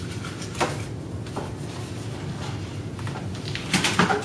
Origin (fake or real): real